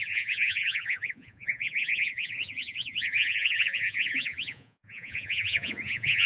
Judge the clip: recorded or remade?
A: remade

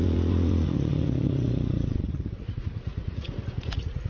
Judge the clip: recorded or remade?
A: remade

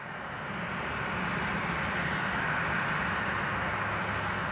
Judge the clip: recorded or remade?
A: recorded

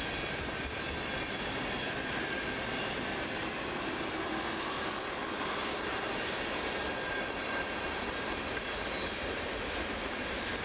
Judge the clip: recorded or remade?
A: recorded